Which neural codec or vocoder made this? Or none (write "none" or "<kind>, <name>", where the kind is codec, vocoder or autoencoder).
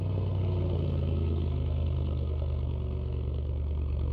codec, SNAC